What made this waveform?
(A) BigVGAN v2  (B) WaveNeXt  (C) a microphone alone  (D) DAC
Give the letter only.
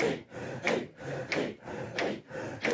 A